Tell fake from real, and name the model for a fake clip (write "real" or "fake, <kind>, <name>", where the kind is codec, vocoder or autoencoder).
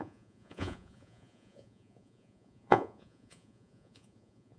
fake, vocoder, Vocos